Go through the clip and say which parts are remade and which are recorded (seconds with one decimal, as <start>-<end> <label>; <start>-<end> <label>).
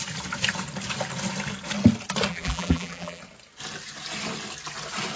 0.0-2.3 recorded; 2.3-3.2 remade; 3.2-5.2 recorded